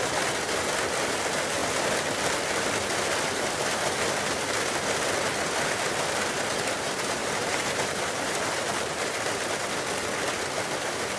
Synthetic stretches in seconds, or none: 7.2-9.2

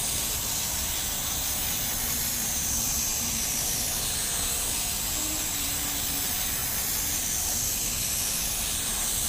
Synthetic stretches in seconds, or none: none